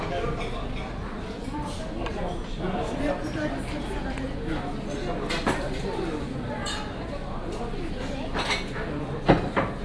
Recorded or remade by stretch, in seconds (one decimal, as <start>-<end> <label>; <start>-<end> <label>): 0.0-1.0 recorded; 1.0-3.5 remade; 3.5-9.8 recorded